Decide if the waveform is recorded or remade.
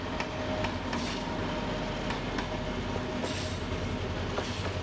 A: recorded